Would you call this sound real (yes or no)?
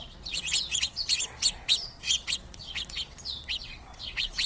no